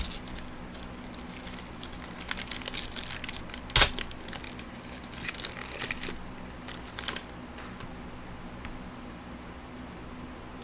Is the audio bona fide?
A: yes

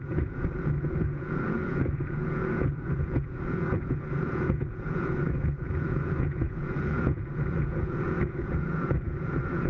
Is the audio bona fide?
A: no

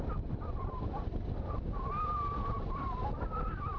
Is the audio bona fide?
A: yes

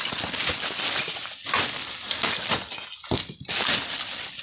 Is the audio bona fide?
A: yes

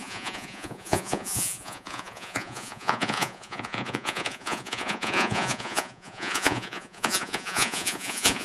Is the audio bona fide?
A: no